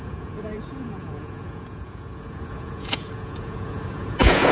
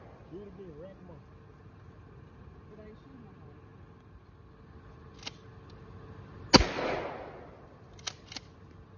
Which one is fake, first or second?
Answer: first